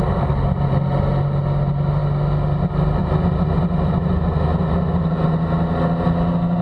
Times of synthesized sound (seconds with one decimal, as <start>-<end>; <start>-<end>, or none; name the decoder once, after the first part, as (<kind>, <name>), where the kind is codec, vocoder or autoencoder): none